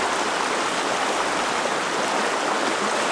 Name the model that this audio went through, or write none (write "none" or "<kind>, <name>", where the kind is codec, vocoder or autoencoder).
none